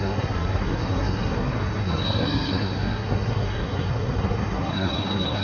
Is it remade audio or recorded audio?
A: remade